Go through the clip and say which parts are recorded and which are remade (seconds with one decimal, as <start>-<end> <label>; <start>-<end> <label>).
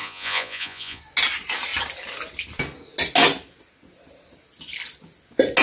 0.0-1.0 remade; 1.0-5.6 recorded